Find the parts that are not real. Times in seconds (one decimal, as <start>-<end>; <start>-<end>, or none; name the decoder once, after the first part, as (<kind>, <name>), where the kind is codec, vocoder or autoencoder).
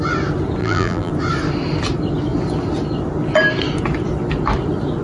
0.6-1.1 (vocoder, BigVGAN v2)